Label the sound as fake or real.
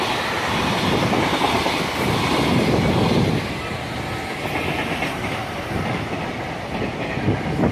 real